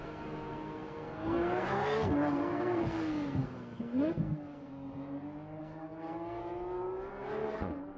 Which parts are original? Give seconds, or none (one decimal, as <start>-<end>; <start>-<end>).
4.7-5.6; 6.4-7.1